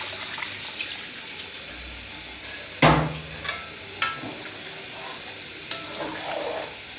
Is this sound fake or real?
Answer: real